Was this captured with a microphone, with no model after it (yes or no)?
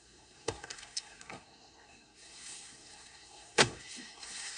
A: no